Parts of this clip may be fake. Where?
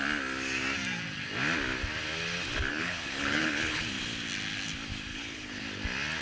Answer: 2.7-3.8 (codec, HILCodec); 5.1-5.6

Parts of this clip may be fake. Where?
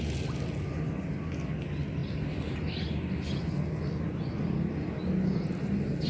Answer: none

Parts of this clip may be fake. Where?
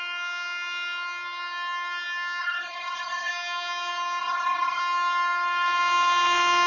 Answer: 2.4-3.3 (codec, HILCodec); 4.2-4.8